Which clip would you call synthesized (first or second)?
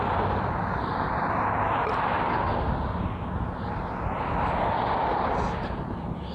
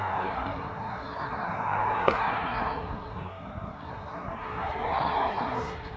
second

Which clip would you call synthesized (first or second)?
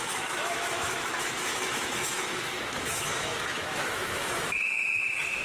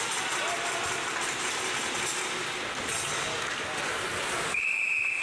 first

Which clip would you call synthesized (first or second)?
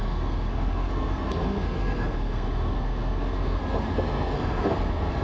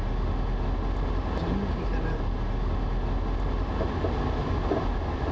first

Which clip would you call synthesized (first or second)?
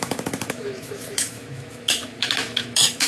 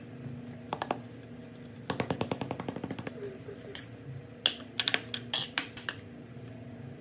first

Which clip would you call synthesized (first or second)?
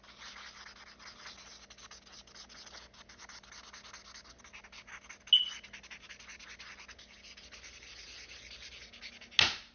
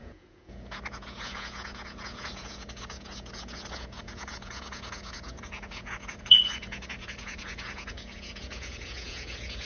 second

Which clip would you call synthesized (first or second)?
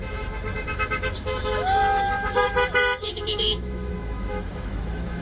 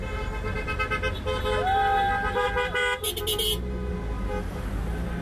first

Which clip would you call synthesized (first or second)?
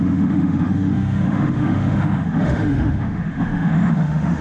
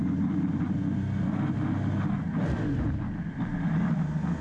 first